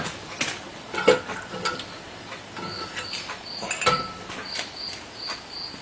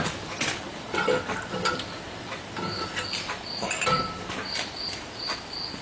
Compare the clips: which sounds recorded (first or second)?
first